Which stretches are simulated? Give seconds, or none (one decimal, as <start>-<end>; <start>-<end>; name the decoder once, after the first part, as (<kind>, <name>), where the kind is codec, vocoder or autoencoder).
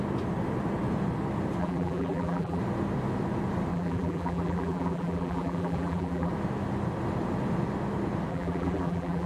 1.6-2.6 (vocoder, BigVGAN v2); 3.7-6.3; 8.3-9.3